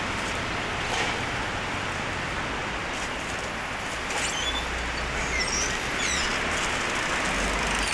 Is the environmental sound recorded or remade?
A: recorded